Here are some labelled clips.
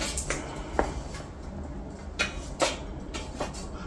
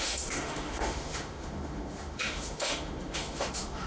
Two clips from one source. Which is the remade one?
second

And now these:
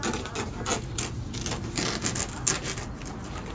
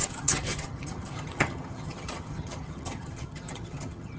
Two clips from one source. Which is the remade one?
second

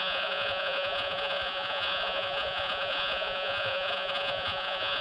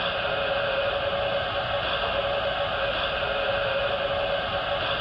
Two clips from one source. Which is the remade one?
first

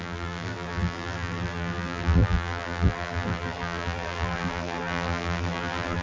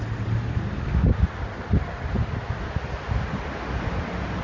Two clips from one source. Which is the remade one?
first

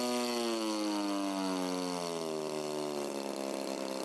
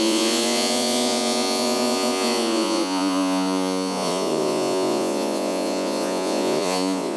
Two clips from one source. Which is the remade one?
second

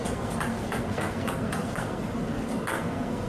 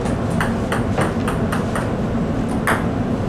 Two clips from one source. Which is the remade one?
first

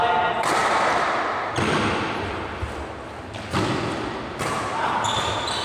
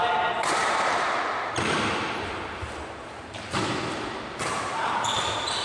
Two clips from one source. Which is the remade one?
second